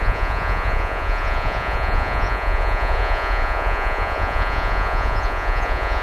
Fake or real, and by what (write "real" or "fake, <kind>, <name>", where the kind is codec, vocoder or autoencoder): fake, vocoder, Vocos